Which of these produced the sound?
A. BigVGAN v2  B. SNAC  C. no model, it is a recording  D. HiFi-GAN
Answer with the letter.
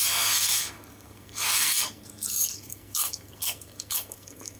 B